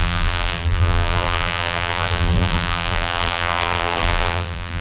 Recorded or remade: remade